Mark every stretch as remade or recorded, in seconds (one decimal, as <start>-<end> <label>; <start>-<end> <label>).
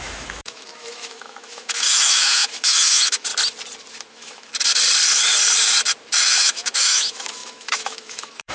0.0-3.3 remade; 3.3-4.1 recorded; 4.1-4.5 remade; 4.5-6.1 recorded; 6.1-8.5 remade